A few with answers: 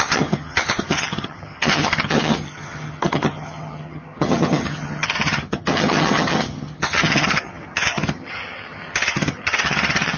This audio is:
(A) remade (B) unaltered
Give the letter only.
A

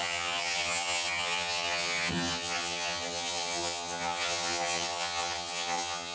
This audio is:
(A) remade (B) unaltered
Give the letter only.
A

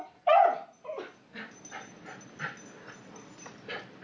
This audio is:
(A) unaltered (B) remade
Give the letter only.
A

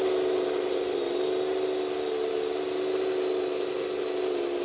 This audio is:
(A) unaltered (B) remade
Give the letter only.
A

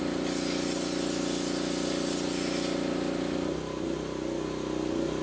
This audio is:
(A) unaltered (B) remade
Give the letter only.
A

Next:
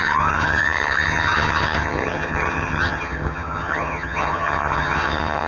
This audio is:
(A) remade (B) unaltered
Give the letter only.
A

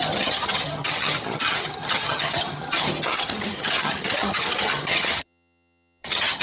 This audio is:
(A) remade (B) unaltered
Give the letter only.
A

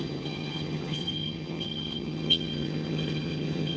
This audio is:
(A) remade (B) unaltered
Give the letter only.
A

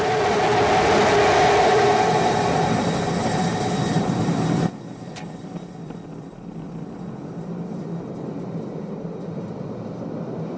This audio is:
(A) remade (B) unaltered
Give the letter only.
B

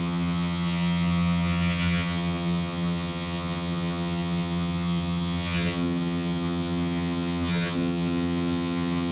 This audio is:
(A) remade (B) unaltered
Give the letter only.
A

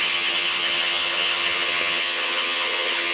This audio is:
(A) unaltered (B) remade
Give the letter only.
B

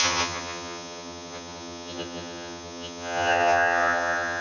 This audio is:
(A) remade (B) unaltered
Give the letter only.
A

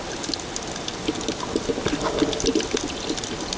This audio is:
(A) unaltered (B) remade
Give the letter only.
A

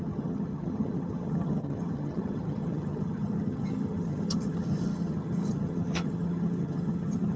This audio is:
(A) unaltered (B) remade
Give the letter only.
B